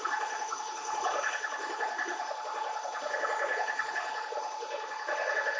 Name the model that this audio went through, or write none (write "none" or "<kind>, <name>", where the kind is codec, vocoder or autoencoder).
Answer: none